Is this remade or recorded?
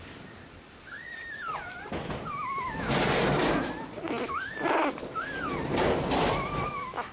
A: recorded